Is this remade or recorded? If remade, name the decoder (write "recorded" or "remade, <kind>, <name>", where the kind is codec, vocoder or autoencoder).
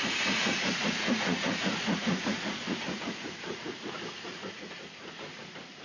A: remade, vocoder, Vocos